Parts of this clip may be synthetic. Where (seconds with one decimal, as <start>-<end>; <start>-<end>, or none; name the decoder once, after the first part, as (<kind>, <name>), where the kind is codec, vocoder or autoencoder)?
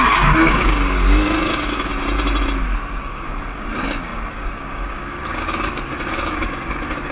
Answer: 0.0-1.9 (codec, DAC); 3.0-7.1